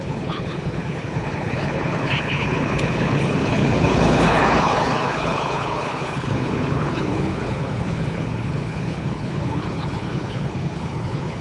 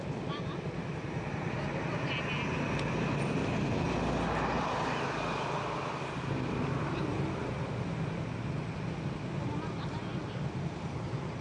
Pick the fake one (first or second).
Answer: first